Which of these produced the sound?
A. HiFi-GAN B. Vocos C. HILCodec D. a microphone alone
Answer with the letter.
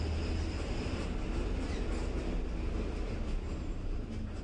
D